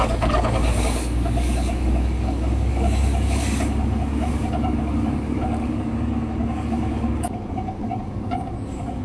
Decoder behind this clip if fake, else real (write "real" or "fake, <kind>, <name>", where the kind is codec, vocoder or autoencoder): fake, codec, DAC